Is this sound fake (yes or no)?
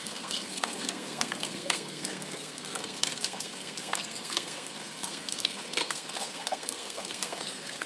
yes